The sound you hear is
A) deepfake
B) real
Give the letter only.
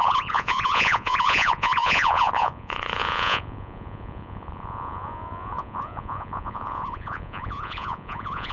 A